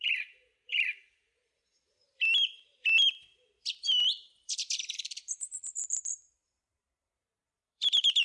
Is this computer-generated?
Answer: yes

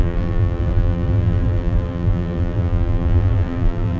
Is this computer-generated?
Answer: yes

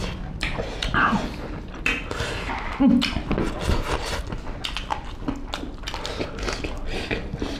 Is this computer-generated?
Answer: no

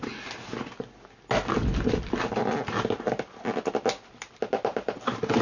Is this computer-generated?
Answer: no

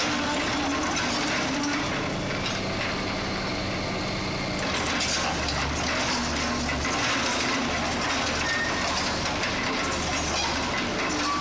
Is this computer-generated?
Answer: no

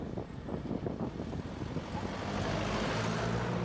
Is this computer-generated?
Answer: no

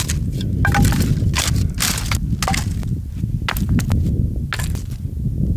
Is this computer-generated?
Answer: no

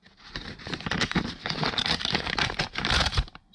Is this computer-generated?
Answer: yes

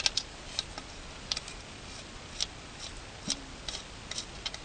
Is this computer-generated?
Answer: no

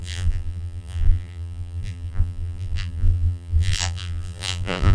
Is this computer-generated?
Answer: yes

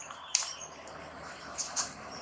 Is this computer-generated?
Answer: yes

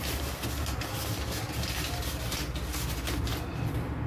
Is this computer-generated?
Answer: no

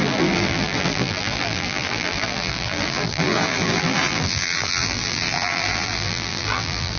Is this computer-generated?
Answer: yes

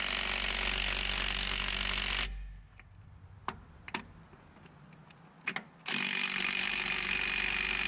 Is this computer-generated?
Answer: no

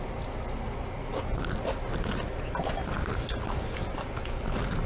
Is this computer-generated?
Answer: no